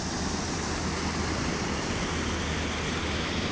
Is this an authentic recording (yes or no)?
yes